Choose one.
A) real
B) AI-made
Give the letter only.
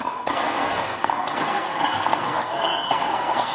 B